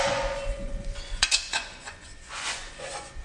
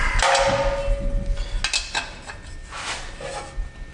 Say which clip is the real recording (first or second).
second